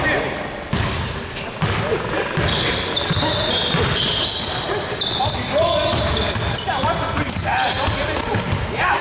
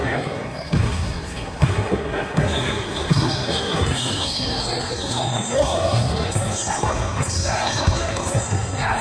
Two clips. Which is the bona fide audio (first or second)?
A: first